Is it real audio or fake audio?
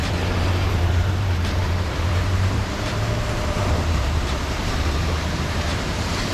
fake